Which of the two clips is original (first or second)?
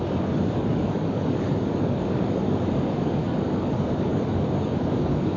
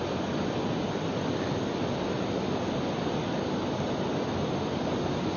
second